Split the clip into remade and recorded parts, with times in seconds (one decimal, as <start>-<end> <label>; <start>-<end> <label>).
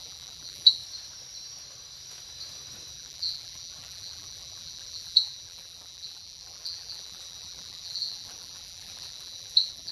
0.0-0.8 remade; 0.8-2.9 recorded; 2.9-9.9 remade